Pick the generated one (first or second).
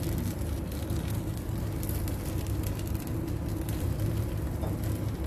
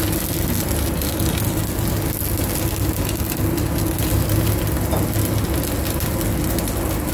first